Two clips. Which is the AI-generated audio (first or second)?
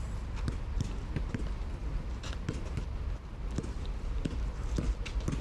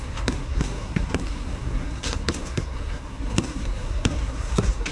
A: second